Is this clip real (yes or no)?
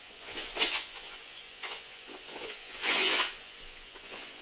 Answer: no